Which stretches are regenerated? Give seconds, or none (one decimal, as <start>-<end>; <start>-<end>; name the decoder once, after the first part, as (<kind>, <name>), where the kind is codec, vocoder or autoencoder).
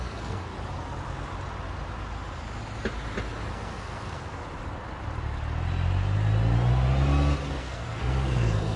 0.0-0.5 (codec, SNAC); 3.5-4.4; 7.5-8.8